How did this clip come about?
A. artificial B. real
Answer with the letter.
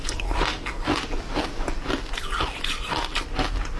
B